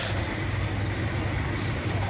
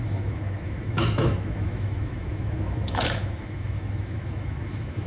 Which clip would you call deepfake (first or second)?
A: second